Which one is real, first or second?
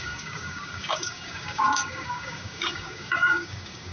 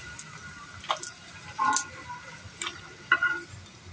second